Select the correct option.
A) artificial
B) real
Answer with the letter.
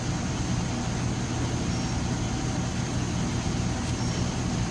B